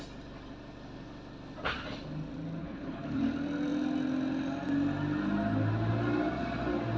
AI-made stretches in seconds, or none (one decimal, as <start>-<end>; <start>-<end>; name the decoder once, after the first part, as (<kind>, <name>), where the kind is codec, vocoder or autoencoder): 2.6-3.2 (codec, HILCodec)